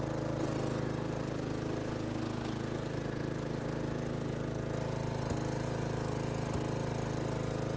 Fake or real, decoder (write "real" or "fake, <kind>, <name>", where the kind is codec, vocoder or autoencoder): real